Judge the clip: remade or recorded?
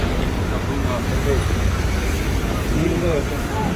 recorded